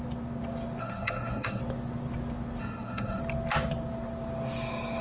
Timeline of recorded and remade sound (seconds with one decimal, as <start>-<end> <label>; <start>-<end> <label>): 0.0-0.8 recorded; 0.8-1.6 remade; 1.6-2.6 recorded; 2.6-3.2 remade; 3.2-5.0 recorded